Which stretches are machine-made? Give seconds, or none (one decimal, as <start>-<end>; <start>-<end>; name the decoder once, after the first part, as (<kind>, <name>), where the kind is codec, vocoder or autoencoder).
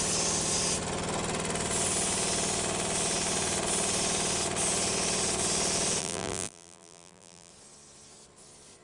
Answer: 6.0-7.5 (vocoder, BigVGAN v2)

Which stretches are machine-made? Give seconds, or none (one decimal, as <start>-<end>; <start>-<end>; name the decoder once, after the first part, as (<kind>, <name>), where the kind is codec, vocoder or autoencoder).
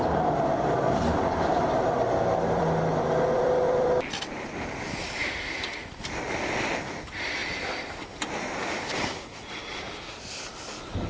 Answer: 1.1-9.6 (vocoder, BigVGAN v2); 10.2-11.1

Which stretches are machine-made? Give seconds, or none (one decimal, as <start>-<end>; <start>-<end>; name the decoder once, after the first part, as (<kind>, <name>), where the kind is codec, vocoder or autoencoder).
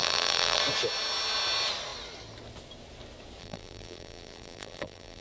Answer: 0.0-0.6 (vocoder, BigVGAN v2); 3.4-5.2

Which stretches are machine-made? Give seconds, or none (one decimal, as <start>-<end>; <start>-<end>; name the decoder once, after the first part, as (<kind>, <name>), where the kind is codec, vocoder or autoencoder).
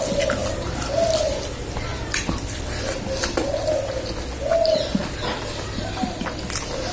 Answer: 0.4-1.5 (vocoder, BigVGAN v2); 1.9-3.0; 4.5-6.4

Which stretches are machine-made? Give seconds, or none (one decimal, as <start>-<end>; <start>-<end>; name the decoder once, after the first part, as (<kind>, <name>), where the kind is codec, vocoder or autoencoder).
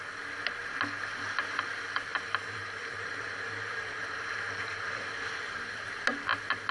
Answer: 2.1-5.9 (vocoder, BigVGAN v2)